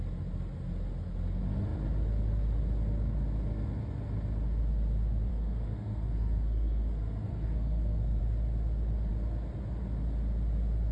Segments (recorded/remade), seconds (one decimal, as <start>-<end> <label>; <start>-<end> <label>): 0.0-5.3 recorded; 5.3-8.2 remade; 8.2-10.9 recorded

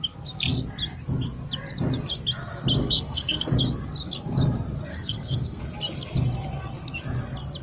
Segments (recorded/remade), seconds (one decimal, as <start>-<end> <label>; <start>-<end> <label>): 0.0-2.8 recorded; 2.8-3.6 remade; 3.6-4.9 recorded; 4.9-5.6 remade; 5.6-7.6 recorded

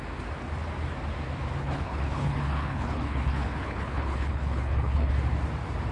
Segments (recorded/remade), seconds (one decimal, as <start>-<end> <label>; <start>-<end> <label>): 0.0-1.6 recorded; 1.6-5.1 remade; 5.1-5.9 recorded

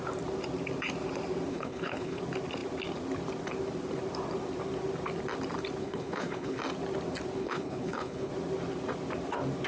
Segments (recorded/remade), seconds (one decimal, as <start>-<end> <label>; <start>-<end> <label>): 0.0-1.5 recorded; 1.5-2.2 remade; 2.2-5.8 recorded; 5.8-6.6 remade; 6.6-7.4 recorded; 7.4-8.3 remade; 8.3-9.7 recorded

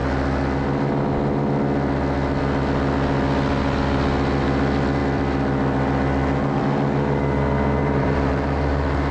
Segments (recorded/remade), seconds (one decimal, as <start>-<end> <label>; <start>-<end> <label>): 0.0-7.8 recorded; 7.8-9.1 remade

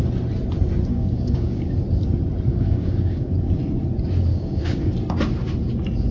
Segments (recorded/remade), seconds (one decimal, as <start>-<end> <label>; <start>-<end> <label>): 0.0-0.9 recorded; 0.9-1.7 remade; 1.7-2.5 recorded; 2.5-3.3 remade; 3.3-4.3 recorded; 4.3-4.9 remade; 4.9-6.1 recorded

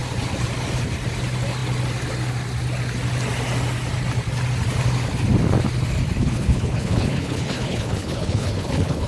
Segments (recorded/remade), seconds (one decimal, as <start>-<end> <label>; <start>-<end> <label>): 0.0-6.2 recorded; 6.2-9.1 remade

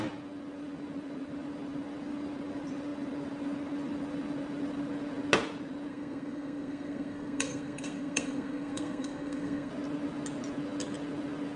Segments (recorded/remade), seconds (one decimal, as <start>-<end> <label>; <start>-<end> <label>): 0.0-5.9 recorded; 5.9-9.7 remade; 9.7-11.6 recorded